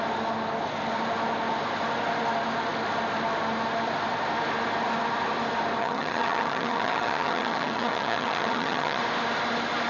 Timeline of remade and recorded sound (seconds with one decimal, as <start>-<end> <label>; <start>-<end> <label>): 0.0-5.8 recorded; 5.8-9.0 remade; 9.0-9.9 recorded